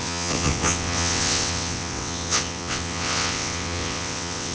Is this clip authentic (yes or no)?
no